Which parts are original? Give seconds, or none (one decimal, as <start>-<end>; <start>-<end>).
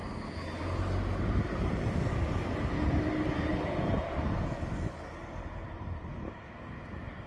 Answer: 0.0-7.3